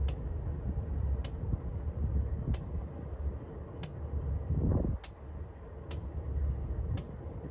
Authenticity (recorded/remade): recorded